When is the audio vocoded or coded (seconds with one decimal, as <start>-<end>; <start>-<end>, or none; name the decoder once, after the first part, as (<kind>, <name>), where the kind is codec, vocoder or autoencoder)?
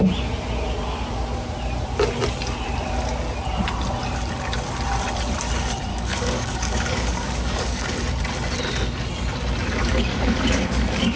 5.9-7.9 (codec, DAC); 9.8-11.2